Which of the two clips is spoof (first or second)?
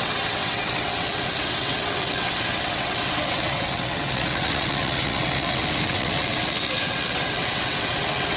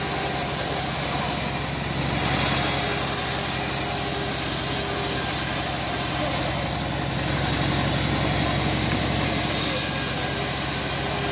first